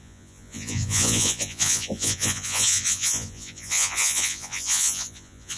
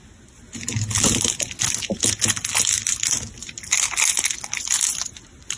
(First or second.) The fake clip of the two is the first